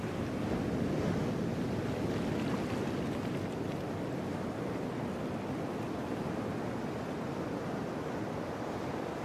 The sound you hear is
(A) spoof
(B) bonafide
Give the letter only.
B